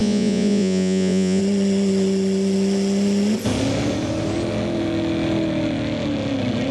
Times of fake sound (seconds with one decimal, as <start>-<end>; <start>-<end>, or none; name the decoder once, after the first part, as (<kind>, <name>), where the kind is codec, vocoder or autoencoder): 0.0-1.4 (vocoder, Vocos)